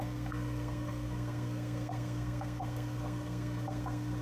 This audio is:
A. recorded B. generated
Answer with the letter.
B